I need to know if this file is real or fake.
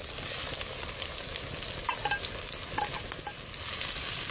real